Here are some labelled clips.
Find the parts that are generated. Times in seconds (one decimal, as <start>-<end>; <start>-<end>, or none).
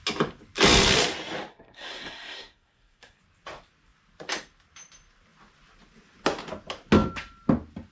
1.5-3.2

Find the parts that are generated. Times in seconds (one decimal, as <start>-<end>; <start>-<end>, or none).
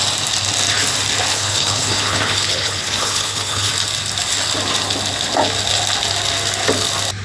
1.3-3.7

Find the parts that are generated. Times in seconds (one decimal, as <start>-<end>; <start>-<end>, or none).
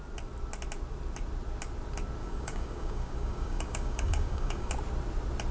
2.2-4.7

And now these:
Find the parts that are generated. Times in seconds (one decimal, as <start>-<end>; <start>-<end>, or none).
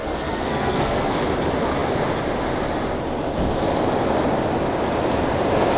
0.0-1.1